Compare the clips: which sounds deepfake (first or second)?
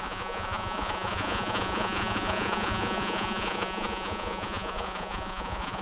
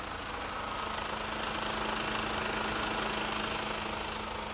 first